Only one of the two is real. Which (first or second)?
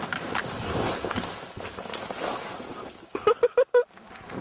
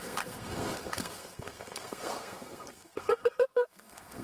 first